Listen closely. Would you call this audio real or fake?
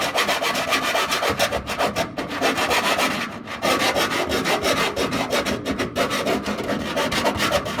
real